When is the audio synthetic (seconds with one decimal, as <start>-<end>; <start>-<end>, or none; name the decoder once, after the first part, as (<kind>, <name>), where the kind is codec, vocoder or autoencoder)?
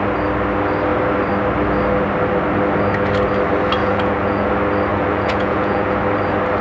3.8-4.5 (vocoder, Vocos); 4.9-6.0